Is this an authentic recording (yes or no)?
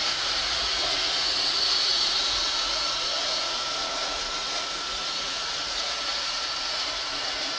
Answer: no